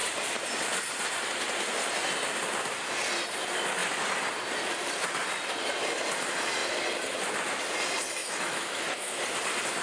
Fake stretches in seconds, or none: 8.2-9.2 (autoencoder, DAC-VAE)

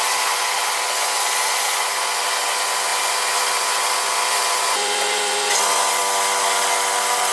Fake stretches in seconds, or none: 0.0-6.0 (vocoder, Vocos)

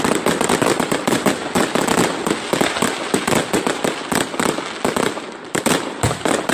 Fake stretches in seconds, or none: 0.0-1.4 (vocoder, BigVGAN v2); 5.3-6.5

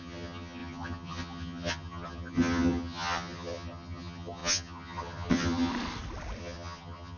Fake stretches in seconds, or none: 0.0-5.7 (vocoder, HiFi-GAN); 6.4-7.2

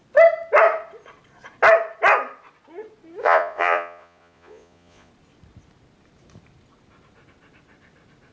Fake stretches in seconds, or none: 3.2-5.1 (vocoder, Vocos)

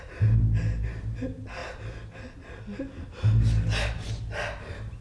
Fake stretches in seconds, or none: none